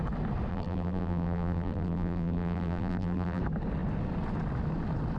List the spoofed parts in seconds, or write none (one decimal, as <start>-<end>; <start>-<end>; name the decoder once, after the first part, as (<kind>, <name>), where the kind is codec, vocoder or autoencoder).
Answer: 0.5-3.4 (vocoder, BigVGAN v2)